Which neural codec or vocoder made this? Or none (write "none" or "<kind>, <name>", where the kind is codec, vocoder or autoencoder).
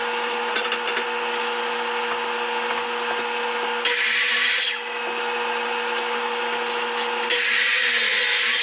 none